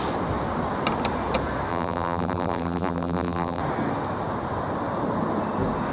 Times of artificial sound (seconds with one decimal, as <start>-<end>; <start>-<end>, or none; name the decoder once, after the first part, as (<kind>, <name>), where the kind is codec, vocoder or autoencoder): 1.7-3.6 (vocoder, BigVGAN v2)